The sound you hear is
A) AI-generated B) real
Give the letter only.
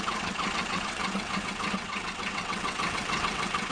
A